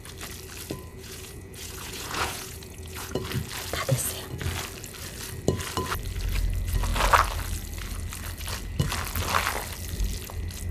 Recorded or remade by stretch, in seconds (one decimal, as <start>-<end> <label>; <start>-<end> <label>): 0.0-0.9 recorded; 0.9-3.2 remade; 3.2-10.7 recorded